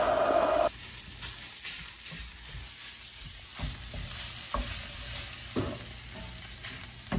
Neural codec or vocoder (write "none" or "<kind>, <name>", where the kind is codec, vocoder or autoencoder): none